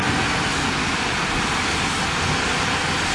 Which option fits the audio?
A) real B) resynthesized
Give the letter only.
A